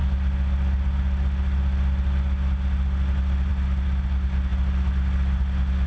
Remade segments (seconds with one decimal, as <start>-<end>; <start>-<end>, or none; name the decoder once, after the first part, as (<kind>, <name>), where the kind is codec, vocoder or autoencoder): none